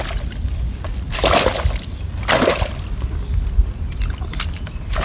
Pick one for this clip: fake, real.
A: real